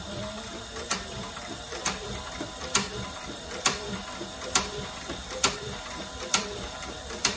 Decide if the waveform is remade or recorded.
remade